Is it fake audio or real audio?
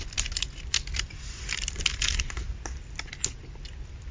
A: real